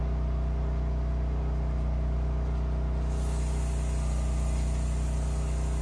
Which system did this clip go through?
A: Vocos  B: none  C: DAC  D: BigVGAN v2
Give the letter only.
B